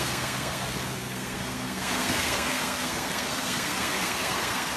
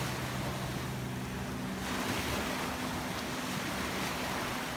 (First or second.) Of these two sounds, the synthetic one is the first